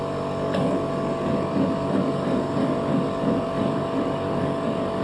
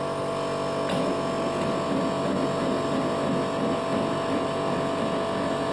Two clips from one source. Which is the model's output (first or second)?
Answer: first